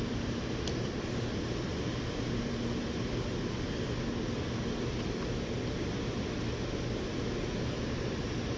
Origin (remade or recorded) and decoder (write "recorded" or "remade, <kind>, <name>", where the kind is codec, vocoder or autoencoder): recorded